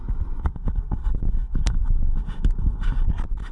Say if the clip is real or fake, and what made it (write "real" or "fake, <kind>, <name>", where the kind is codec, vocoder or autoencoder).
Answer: real